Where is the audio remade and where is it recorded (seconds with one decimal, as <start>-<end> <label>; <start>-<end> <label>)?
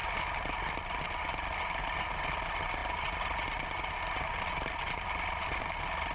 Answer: 0.0-6.1 recorded